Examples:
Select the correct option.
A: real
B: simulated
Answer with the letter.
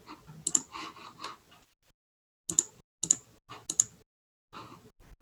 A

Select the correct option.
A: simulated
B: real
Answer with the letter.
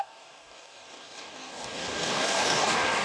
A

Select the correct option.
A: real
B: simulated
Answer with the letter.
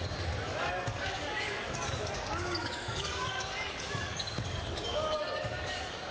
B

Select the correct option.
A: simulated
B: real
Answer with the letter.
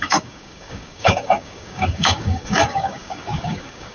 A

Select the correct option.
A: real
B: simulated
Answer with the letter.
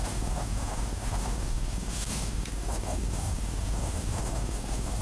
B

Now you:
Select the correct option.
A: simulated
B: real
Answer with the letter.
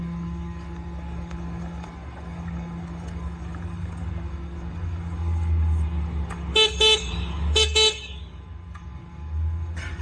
A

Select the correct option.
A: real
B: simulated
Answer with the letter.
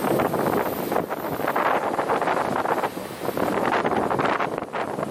A